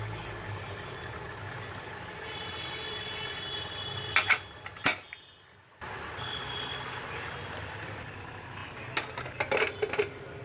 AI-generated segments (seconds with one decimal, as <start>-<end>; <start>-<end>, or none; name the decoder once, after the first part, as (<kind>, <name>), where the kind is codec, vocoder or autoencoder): none

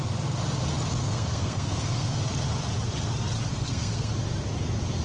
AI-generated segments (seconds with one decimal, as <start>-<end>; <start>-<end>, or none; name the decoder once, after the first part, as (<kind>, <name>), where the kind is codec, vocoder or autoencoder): 1.0-2.2 (codec, SNAC); 3.5-4.1